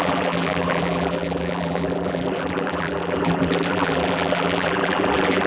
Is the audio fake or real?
fake